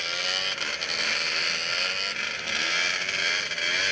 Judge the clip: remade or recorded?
recorded